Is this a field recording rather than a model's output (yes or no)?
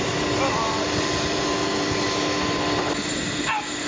yes